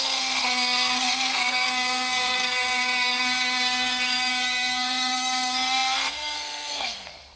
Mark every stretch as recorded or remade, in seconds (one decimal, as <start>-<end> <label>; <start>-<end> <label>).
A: 0.0-7.4 remade